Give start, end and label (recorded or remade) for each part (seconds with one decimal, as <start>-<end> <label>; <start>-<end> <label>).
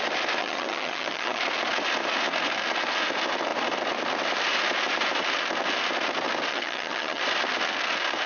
0.0-0.4 recorded; 0.4-1.4 remade; 1.4-6.5 recorded; 6.5-7.2 remade; 7.2-8.3 recorded